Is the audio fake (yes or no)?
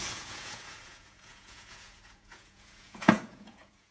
yes